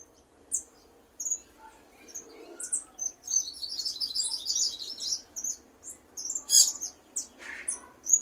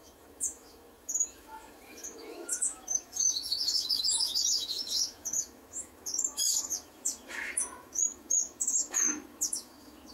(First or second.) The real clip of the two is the first